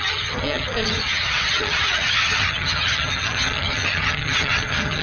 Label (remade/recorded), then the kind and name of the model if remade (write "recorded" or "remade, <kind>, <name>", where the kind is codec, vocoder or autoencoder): remade, vocoder, HiFi-GAN